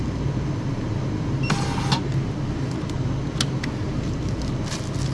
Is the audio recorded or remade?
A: recorded